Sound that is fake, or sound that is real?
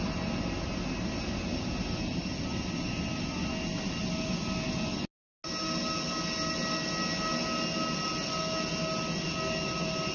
real